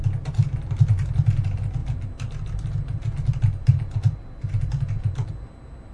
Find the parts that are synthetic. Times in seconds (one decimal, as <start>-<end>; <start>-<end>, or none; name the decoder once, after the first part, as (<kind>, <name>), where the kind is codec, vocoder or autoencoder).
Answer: none